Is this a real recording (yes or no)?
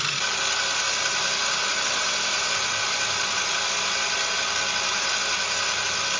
yes